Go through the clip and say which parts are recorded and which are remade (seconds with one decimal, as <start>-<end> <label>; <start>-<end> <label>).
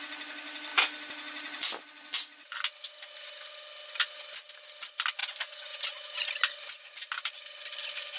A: 0.0-8.2 recorded